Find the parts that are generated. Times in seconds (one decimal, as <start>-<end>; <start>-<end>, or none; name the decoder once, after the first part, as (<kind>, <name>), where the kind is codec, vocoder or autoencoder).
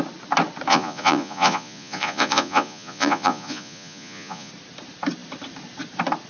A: 0.7-4.5 (vocoder, Vocos)